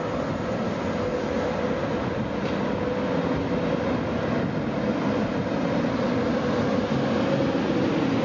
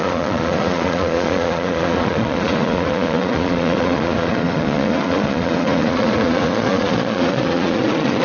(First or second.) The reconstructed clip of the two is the second